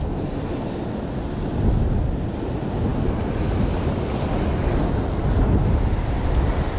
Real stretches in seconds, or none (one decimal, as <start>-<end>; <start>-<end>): 0.0-6.8